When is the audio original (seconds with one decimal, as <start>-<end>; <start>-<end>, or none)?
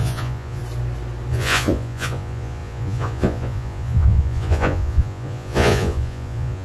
0.6-1.3